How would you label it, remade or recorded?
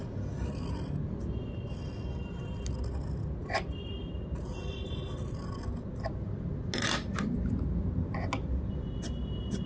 recorded